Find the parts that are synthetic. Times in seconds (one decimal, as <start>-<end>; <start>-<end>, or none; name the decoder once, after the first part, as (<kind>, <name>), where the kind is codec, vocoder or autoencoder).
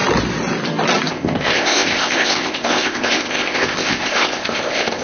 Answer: 1.1-5.0 (codec, ZipCodec)